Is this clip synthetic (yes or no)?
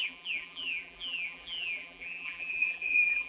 yes